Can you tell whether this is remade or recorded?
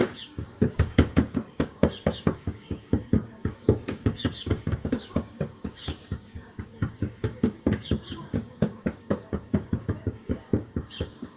remade